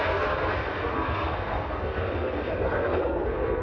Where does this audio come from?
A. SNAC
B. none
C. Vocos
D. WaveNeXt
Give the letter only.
A